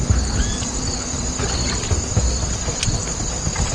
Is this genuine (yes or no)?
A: yes